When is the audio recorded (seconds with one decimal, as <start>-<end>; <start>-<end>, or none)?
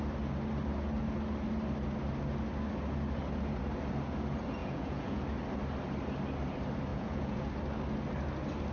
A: 0.0-4.6; 5.2-6.9; 7.5-8.7